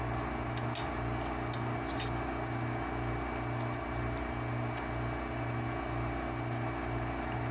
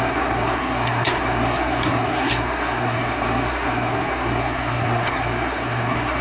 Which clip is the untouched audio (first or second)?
first